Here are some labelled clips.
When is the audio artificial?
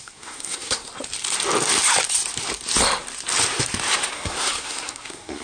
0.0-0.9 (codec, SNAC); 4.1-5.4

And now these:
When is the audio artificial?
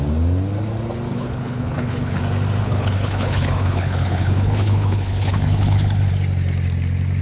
1.1-2.2 (codec, HILCodec); 2.6-6.1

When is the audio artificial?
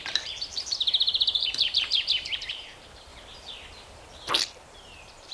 0.0-3.1 (vocoder, BigVGAN v2); 4.3-5.3